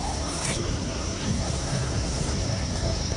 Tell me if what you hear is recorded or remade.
remade